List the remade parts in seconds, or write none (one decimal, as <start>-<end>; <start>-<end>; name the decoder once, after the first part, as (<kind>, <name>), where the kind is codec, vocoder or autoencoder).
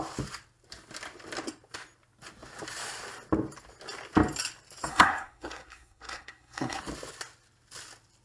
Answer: 4.9-6.8 (codec, SNAC)